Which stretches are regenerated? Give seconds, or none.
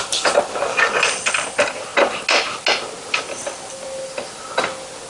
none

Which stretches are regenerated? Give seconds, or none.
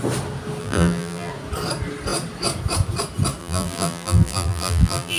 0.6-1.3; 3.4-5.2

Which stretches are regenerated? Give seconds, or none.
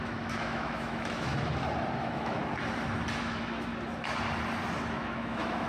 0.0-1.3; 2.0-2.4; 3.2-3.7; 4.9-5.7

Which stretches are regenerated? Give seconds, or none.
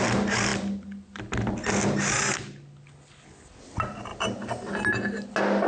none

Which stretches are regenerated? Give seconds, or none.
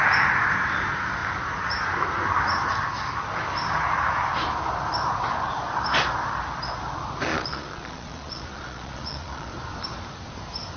7.3-9.5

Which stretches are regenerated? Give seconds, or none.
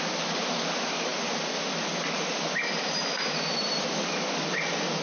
none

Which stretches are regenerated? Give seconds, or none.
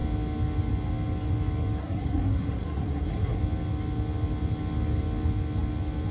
1.8-3.4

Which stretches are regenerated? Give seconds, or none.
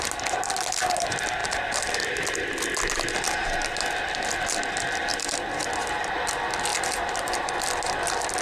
5.1-5.7; 6.7-7.5